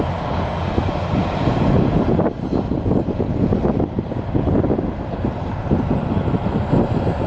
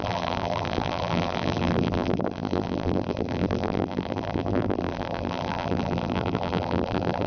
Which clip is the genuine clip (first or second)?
first